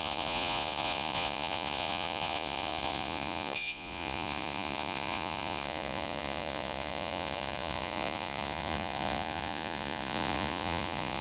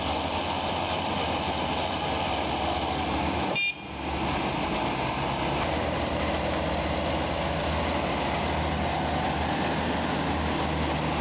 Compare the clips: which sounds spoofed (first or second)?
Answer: first